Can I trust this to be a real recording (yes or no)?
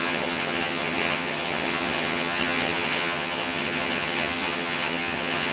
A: no